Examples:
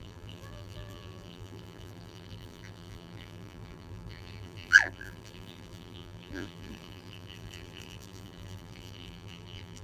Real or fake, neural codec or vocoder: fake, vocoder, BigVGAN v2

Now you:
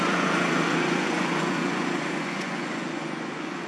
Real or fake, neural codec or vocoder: fake, vocoder, Vocos